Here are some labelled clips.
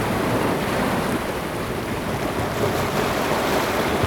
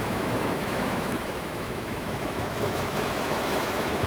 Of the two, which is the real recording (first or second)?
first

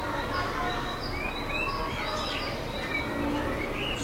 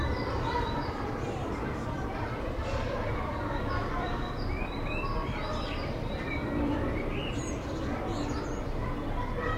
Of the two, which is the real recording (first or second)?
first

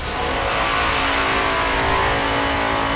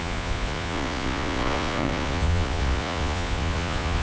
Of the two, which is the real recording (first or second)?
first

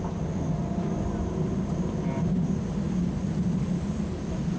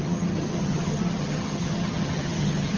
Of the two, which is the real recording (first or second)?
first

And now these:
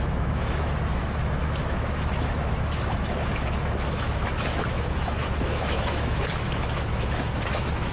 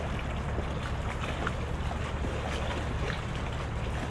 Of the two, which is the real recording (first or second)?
second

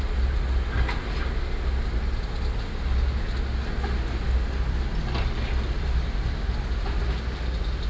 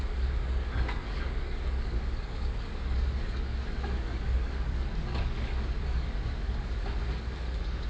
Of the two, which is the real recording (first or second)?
first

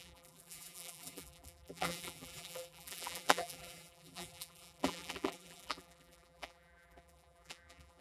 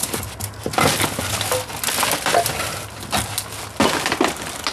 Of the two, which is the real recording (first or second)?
second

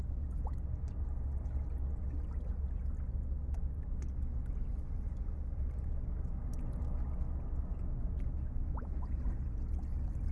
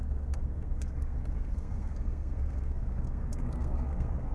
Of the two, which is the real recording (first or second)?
first